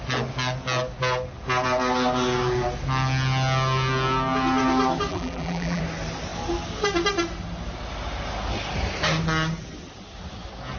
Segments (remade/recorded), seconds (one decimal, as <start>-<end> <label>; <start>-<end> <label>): 0.0-5.1 recorded; 5.1-5.8 remade; 5.8-10.8 recorded